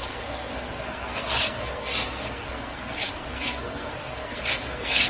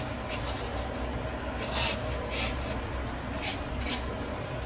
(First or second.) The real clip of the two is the second